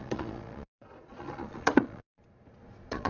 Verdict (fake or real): fake